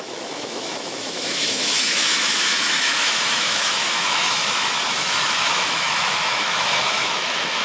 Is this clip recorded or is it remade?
remade